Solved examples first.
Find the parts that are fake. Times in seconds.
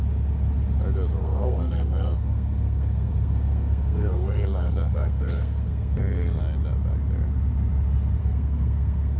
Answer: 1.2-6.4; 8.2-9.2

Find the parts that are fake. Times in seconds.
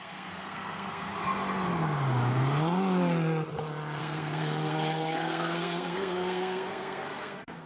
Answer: 0.0-1.1; 4.0-7.7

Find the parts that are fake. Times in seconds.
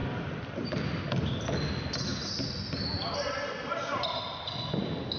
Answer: none